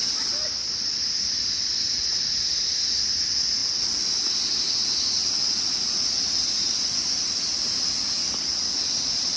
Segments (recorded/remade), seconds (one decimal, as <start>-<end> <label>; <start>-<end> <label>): 0.0-9.4 recorded